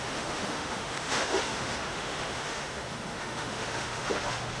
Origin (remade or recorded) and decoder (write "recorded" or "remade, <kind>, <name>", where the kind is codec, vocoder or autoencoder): remade, autoencoder, DAC-VAE